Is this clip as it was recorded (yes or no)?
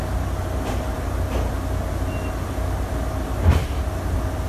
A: yes